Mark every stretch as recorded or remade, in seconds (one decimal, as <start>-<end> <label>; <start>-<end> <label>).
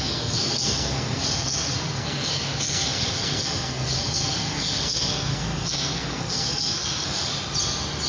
0.0-7.3 remade; 7.3-8.1 recorded